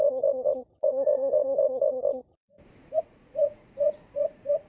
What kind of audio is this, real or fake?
fake